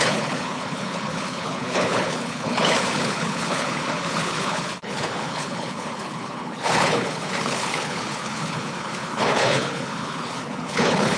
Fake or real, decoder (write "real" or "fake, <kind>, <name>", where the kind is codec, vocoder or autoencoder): fake, codec, HILCodec